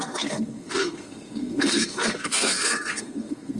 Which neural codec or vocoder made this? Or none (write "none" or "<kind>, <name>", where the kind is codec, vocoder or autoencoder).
codec, SNAC